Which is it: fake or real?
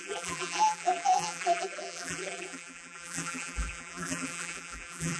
fake